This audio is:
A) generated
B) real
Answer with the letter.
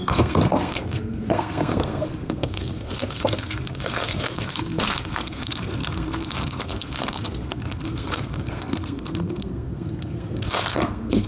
A